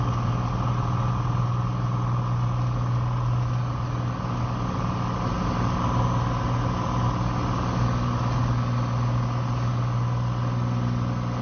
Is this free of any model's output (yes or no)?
yes